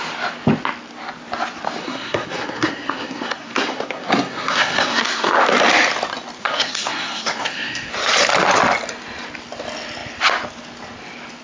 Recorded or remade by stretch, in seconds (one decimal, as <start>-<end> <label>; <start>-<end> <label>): 0.0-1.8 recorded; 1.8-5.4 remade; 5.4-6.4 recorded; 6.4-7.9 remade; 7.9-11.4 recorded